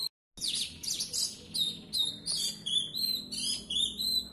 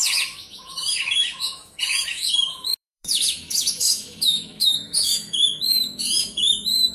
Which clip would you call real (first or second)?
first